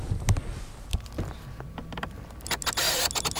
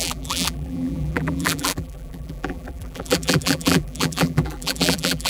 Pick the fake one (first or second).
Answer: second